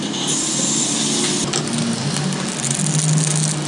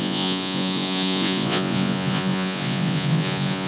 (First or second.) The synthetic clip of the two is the second